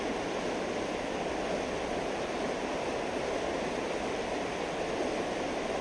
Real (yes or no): yes